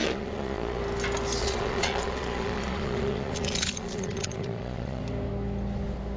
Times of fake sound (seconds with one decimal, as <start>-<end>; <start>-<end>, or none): 0.0-0.8; 1.4-5.0